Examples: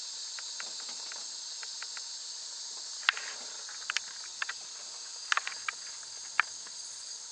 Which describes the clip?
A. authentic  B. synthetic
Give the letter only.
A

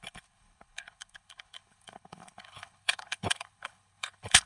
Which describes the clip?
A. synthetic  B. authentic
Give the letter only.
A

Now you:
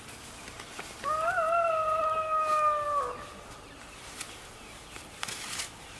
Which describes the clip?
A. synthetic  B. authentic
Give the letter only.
B